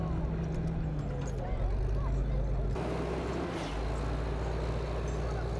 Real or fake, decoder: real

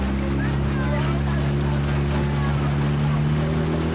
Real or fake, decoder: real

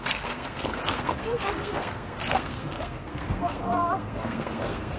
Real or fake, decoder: fake, codec, SNAC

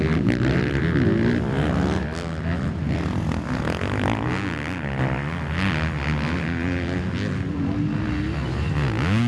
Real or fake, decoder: real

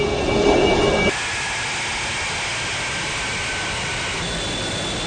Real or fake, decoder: real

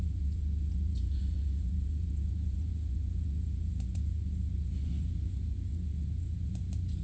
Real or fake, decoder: fake, vocoder, Vocos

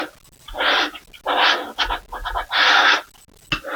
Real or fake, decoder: real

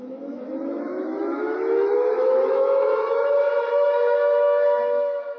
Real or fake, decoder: fake, autoencoder, DAC-VAE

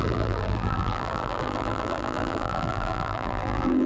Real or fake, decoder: fake, vocoder, BigVGAN v2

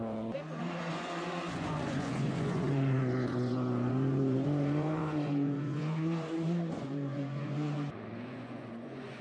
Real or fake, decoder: fake, vocoder, Vocos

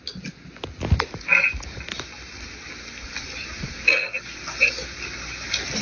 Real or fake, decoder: real